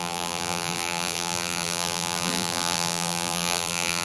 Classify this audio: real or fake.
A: fake